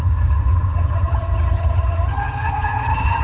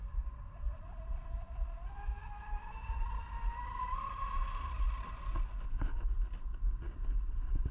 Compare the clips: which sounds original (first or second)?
second